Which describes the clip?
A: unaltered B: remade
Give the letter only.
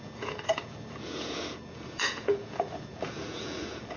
B